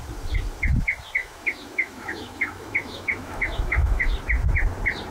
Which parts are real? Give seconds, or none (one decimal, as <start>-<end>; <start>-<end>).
0.0-1.2; 4.1-5.1